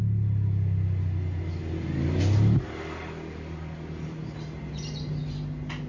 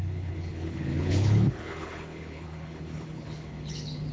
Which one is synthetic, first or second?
second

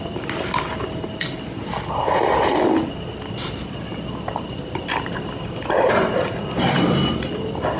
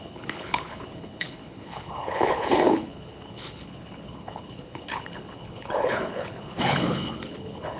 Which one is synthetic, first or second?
second